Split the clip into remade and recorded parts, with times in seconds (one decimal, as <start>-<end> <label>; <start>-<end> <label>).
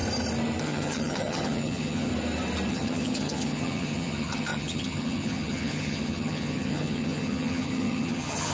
0.0-0.6 recorded; 0.6-2.1 remade; 2.1-2.7 recorded; 2.7-8.5 remade